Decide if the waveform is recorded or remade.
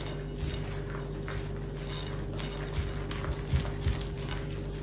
recorded